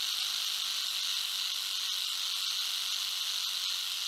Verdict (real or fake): real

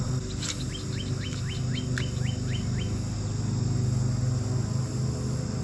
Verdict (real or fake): real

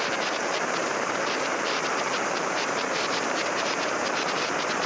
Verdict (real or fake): fake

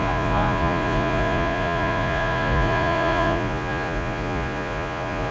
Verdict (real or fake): fake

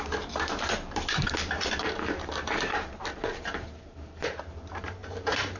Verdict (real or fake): fake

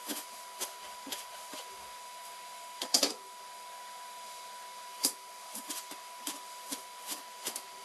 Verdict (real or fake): fake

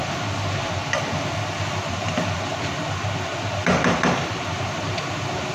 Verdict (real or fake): real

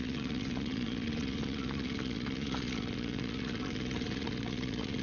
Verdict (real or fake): fake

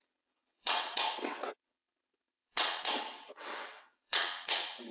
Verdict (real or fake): fake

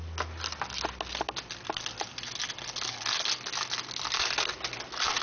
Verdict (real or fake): real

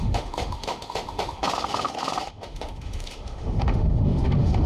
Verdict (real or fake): fake